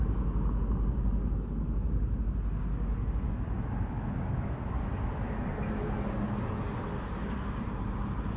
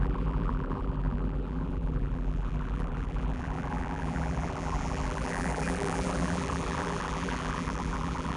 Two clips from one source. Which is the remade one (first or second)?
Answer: second